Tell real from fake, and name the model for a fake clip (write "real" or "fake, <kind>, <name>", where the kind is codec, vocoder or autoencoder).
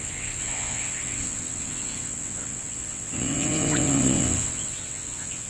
fake, vocoder, WaveNeXt